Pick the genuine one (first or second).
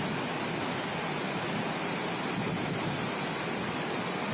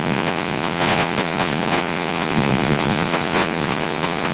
first